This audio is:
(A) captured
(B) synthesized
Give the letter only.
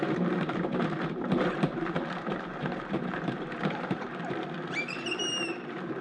B